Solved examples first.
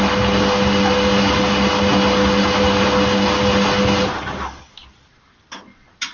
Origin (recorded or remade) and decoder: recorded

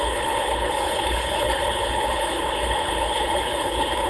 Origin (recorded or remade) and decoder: remade, codec, HILCodec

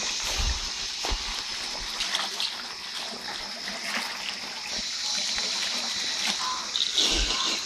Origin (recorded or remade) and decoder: recorded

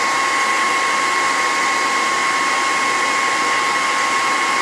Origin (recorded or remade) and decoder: recorded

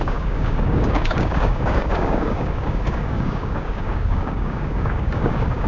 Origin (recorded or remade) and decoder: remade, codec, DAC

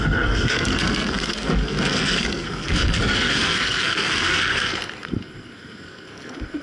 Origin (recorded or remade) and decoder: remade, codec, SNAC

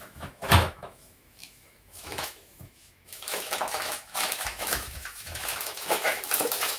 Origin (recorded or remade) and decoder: remade, autoencoder, DAC-VAE